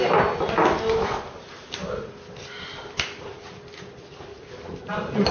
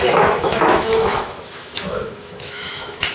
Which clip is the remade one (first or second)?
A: second